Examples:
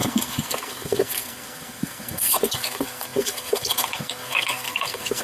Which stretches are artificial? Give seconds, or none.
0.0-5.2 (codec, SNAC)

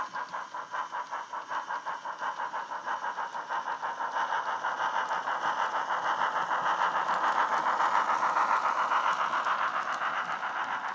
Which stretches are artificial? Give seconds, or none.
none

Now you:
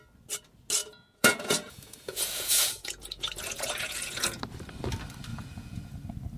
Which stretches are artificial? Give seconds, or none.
0.8-4.4 (vocoder, Vocos); 5.3-5.9

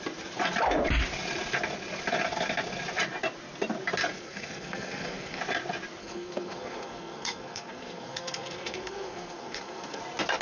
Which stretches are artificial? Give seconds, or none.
4.1-5.4 (codec, SNAC); 6.0-10.0

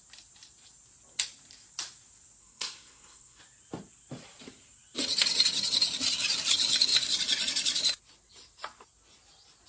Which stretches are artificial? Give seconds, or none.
2.4-3.4 (codec, SNAC)

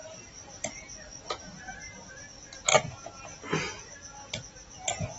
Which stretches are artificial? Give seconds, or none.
none

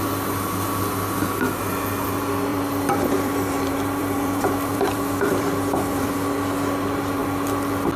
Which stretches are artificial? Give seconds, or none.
2.5-6.1 (vocoder, BigVGAN v2)